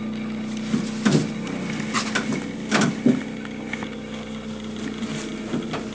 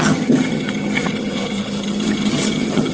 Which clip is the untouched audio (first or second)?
first